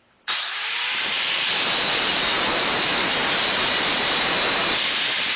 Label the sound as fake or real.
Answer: fake